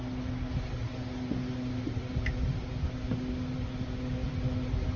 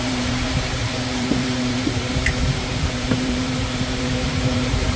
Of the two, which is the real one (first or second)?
first